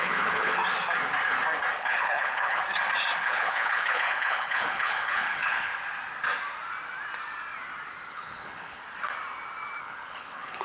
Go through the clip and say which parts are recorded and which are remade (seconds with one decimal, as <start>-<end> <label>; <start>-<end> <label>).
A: 0.0-0.6 remade; 0.6-1.7 recorded; 1.7-2.6 remade; 2.6-3.2 recorded; 3.2-5.7 remade; 5.7-8.1 recorded; 8.1-8.8 remade; 8.8-9.8 recorded; 9.8-10.6 remade